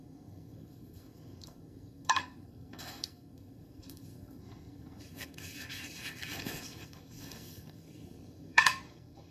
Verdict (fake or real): fake